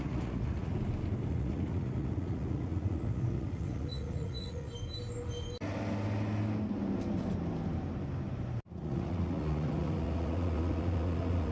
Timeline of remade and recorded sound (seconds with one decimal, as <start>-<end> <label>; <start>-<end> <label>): 0.0-0.7 remade; 0.7-1.3 recorded; 1.3-4.7 remade; 4.7-8.8 recorded; 8.8-11.5 remade